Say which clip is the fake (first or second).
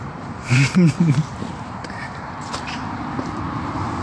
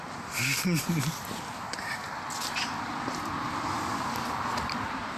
first